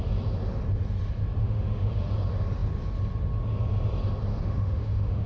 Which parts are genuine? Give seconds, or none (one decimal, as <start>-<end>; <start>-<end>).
0.0-1.4; 2.1-4.3